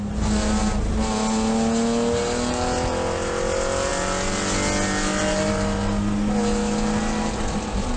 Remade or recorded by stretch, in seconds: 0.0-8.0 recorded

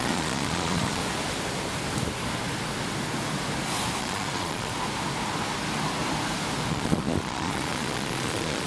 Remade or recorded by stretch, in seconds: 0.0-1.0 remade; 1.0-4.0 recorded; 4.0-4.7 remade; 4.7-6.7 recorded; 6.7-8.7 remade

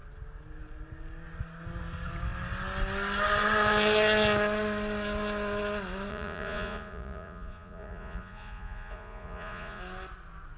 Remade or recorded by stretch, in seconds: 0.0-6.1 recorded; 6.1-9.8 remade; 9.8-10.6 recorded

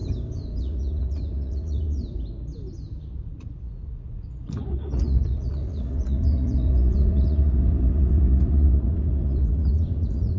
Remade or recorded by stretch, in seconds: 0.0-0.6 recorded; 0.6-2.0 remade; 2.0-3.2 recorded; 3.2-10.4 remade

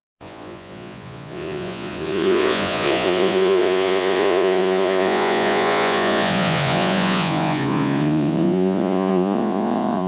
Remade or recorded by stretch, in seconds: 0.0-10.1 remade

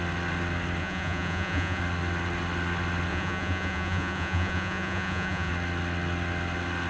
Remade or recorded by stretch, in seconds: 0.0-0.8 recorded; 0.8-1.8 remade; 1.8-3.1 recorded; 3.1-5.5 remade; 5.5-6.9 recorded

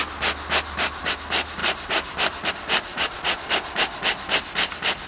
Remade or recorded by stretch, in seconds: 0.0-2.9 recorded; 2.9-3.5 remade; 3.5-5.1 recorded